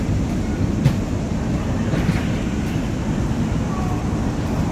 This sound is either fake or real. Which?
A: real